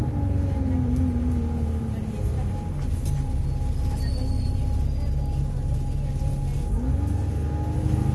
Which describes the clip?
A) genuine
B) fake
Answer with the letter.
A